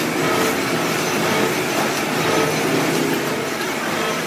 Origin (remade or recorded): recorded